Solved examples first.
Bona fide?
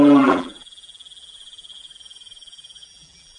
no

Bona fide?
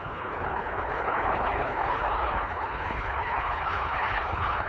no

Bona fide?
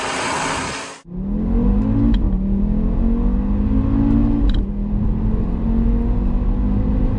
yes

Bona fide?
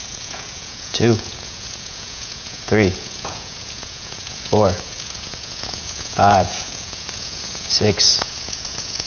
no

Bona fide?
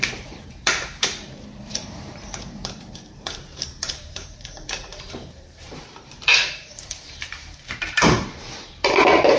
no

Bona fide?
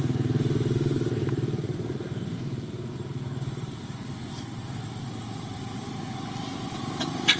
no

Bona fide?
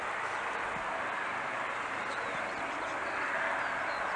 yes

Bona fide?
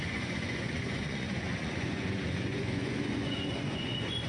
no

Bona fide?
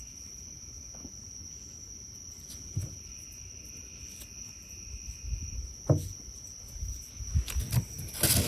yes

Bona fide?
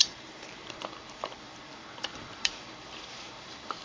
no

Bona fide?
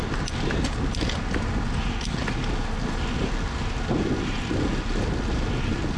yes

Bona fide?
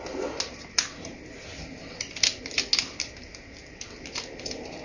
yes